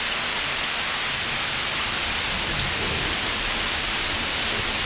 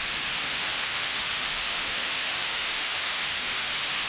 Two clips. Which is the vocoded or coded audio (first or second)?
second